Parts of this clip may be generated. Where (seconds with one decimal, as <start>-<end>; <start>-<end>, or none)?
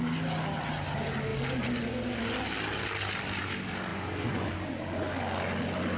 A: 3.9-4.5